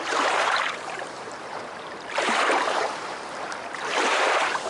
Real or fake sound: fake